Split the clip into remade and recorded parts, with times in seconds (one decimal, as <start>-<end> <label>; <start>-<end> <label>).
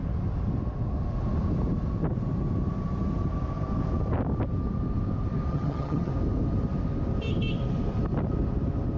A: 0.0-5.5 recorded; 5.5-6.1 remade; 6.1-9.0 recorded